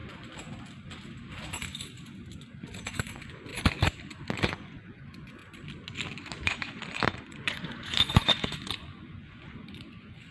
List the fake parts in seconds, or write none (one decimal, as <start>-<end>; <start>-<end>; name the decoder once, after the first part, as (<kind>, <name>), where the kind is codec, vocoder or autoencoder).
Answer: 2.9-3.5 (vocoder, Vocos); 4.4-5.4; 6.4-10.3

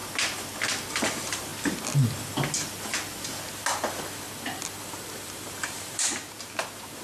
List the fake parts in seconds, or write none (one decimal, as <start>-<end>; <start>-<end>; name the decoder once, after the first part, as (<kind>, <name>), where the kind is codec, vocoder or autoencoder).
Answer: 0.9-1.5 (vocoder, BigVGAN v2); 4.8-7.0

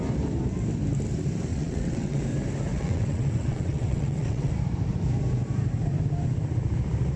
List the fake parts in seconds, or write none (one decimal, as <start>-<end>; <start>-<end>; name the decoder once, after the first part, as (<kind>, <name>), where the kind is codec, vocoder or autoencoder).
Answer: 1.5-2.2 (vocoder, WaveNeXt); 2.7-4.5

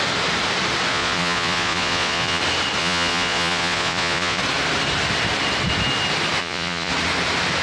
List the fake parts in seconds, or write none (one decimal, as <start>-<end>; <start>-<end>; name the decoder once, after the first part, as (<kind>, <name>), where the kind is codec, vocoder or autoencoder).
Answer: 0.9-2.4 (vocoder, Vocos); 2.8-4.4; 6.4-6.9

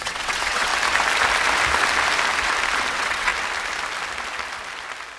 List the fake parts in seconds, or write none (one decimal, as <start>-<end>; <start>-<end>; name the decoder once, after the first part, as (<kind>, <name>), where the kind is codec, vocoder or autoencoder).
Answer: 0.0-0.7 (vocoder, WaveNeXt); 2.9-3.3

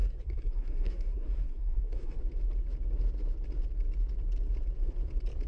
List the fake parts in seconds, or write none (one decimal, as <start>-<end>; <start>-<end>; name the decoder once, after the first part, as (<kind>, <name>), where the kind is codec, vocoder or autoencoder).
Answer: 0.0-2.2 (codec, SNAC)

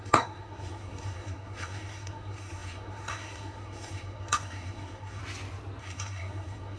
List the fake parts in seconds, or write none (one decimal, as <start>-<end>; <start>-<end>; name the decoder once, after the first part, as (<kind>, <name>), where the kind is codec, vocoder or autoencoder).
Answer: 0.0-5.2 (codec, SNAC); 5.8-6.8